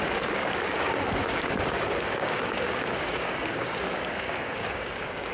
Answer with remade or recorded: remade